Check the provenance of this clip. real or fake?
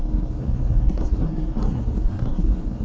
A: fake